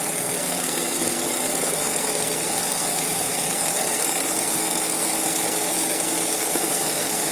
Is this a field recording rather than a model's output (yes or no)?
no